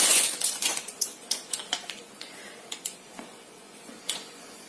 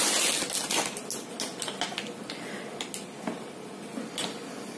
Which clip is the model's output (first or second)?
first